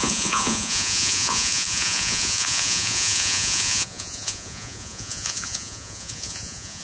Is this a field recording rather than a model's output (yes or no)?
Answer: no